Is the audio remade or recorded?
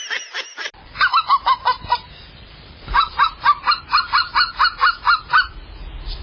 recorded